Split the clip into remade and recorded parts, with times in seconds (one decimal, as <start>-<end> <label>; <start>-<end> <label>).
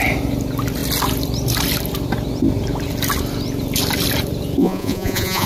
0.0-4.6 recorded; 4.6-5.5 remade